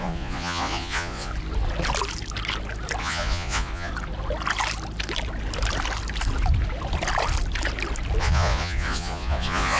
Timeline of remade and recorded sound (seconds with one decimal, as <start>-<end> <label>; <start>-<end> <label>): 0.0-1.3 remade; 1.3-3.0 recorded; 3.0-3.9 remade; 3.9-8.2 recorded; 8.2-9.8 remade